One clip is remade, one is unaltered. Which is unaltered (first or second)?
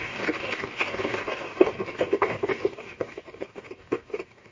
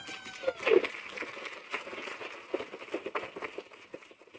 second